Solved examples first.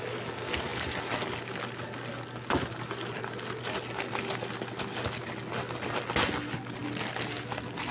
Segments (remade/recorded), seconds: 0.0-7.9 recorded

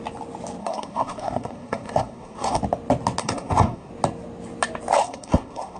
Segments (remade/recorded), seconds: 0.0-0.6 recorded; 0.6-2.6 remade; 2.6-3.2 recorded; 3.2-3.9 remade; 3.9-5.0 recorded; 5.0-5.8 remade

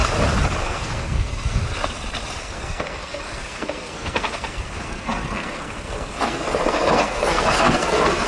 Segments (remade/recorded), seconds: 0.0-0.6 recorded; 0.6-1.6 remade; 1.6-2.4 recorded; 2.4-8.3 remade